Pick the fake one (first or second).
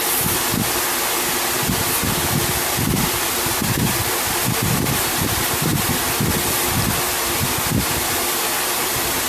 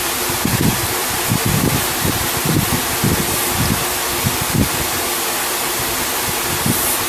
first